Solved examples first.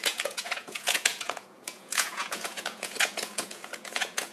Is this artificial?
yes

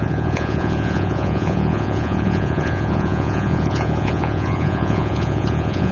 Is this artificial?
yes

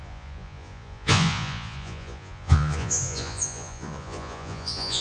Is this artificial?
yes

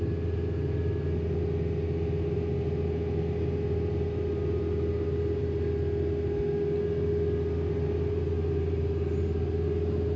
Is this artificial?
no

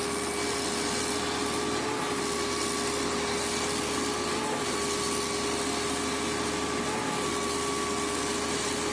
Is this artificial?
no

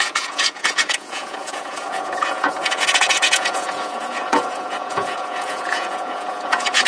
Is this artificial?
yes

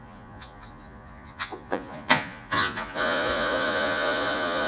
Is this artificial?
yes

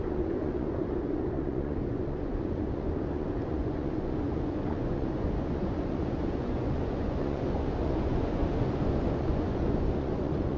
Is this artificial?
yes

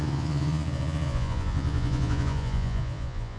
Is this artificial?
yes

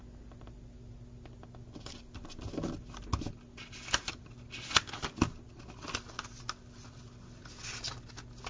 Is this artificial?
no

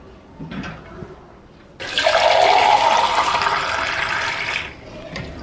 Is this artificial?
no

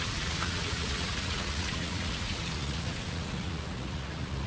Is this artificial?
yes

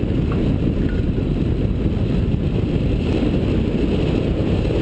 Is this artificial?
no